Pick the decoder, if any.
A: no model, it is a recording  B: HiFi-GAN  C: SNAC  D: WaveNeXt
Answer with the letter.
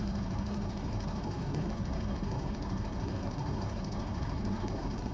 C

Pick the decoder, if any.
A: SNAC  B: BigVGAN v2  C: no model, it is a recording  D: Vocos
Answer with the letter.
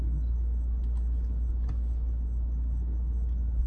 C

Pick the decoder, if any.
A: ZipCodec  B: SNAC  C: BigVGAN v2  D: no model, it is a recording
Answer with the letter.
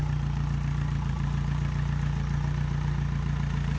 C